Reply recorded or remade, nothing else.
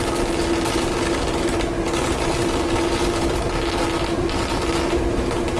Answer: recorded